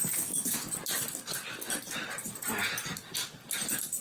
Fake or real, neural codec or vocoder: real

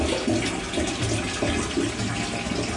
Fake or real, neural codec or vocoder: real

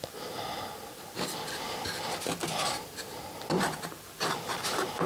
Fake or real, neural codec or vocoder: real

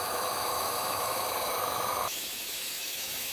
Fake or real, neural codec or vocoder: fake, autoencoder, DAC-VAE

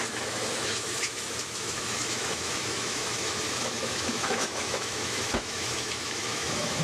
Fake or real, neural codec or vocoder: fake, autoencoder, DAC-VAE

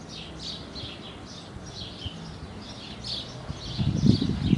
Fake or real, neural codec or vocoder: real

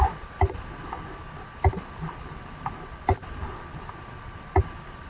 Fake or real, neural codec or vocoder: real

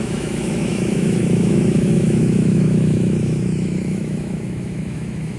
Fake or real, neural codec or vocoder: fake, autoencoder, DAC-VAE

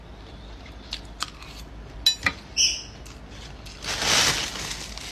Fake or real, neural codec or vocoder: real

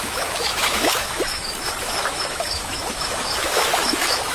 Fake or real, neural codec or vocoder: fake, autoencoder, DAC-VAE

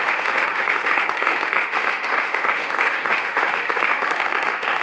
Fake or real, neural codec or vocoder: fake, autoencoder, DAC-VAE